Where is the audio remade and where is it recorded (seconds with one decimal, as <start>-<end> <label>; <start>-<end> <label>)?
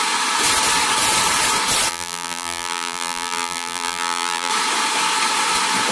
0.0-1.9 recorded; 1.9-4.5 remade; 4.5-5.9 recorded